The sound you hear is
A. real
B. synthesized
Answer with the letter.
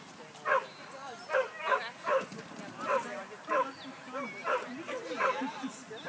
A